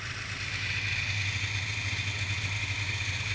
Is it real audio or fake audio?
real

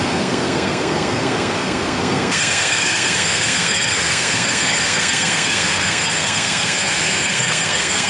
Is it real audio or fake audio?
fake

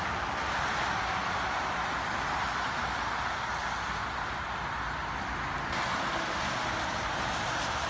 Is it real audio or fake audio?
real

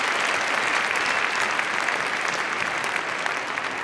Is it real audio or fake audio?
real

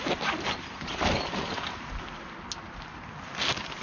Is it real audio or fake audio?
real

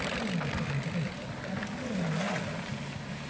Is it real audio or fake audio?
real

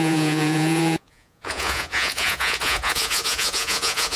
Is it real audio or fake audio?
fake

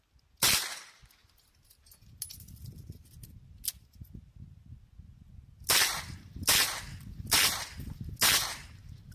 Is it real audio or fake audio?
real